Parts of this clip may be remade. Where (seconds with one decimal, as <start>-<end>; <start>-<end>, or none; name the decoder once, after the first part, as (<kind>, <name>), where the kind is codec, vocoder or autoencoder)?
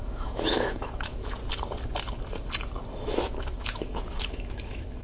0.0-1.4 (autoencoder, DAC-VAE); 3.1-5.0